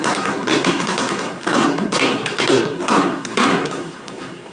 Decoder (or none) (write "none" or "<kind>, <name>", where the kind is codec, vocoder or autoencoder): codec, SNAC